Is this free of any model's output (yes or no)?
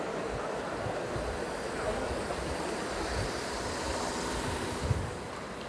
yes